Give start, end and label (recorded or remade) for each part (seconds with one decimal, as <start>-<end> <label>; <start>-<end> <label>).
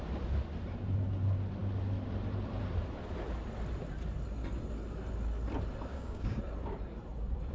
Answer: 0.0-5.9 recorded; 5.9-6.4 remade; 6.4-7.5 recorded